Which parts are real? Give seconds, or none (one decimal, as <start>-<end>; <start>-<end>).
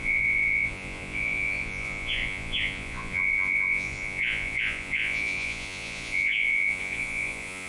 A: none